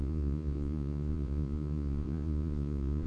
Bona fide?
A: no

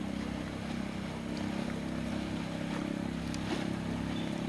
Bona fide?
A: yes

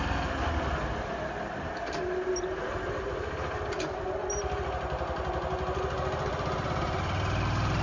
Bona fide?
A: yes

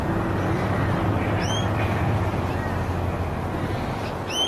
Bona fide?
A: yes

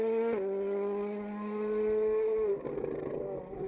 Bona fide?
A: yes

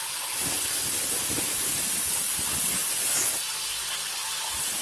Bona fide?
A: yes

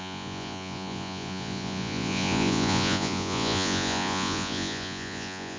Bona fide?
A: no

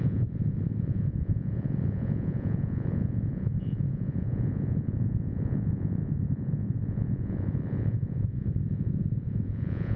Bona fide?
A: no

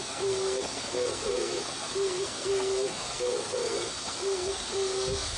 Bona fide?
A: no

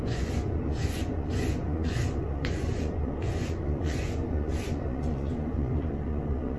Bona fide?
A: no